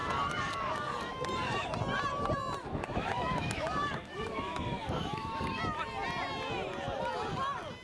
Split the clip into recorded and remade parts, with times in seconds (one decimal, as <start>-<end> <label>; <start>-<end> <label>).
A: 0.0-1.7 remade; 1.7-2.6 recorded; 2.6-5.6 remade; 5.6-7.8 recorded